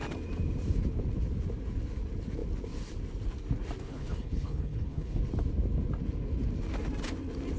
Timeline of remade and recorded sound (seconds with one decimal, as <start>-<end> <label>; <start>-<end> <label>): 0.0-3.8 recorded; 3.8-5.2 remade; 5.2-7.6 recorded

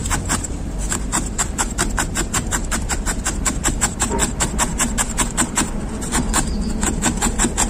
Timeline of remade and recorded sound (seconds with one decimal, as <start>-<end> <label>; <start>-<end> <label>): 0.0-7.7 remade